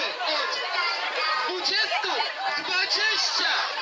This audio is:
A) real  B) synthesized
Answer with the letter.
A